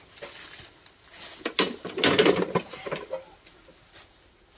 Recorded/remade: recorded